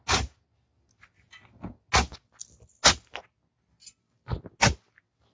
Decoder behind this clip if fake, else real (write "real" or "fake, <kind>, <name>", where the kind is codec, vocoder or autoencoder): real